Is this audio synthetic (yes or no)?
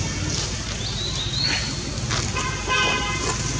no